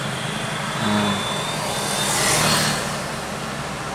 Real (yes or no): yes